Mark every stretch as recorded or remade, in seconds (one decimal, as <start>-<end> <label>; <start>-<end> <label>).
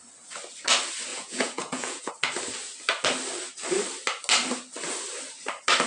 0.0-1.1 recorded; 1.1-2.1 remade; 2.1-5.9 recorded